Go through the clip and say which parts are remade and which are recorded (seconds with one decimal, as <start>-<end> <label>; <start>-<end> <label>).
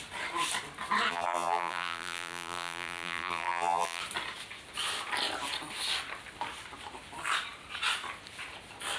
0.0-1.1 recorded; 1.1-4.0 remade; 4.0-9.0 recorded